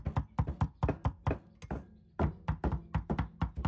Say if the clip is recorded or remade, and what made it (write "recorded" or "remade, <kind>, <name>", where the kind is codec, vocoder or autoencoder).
recorded